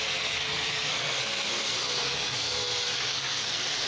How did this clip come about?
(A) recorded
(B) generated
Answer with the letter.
B